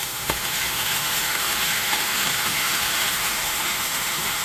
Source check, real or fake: fake